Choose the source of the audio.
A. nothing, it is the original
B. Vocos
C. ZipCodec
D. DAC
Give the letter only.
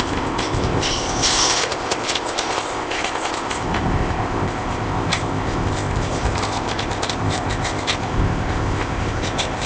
C